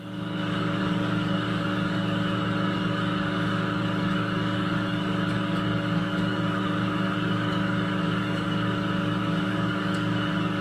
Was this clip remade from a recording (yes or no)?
yes